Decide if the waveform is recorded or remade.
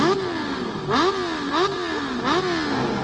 recorded